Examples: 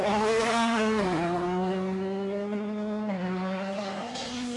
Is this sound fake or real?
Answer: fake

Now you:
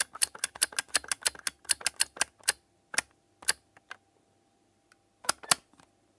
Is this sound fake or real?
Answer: real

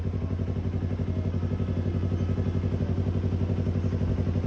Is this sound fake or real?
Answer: real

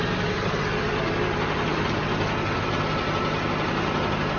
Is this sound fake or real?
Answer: real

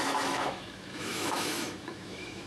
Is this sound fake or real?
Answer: fake